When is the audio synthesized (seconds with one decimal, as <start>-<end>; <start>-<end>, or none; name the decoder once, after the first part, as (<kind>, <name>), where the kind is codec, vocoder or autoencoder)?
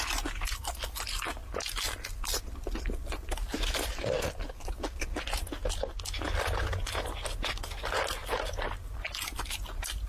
8.2-9.6 (vocoder, BigVGAN v2)